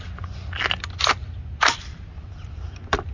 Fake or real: real